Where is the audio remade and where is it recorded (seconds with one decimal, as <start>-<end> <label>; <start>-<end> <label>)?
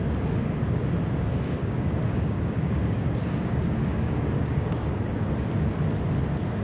0.0-1.6 recorded; 1.6-5.3 remade; 5.3-6.6 recorded